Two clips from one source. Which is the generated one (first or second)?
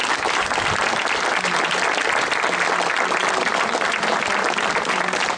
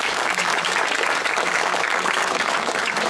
second